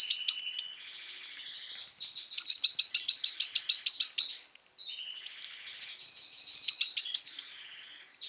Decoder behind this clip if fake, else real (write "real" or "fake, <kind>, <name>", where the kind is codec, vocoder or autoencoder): real